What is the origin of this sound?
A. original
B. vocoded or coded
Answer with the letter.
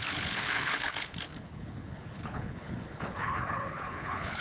B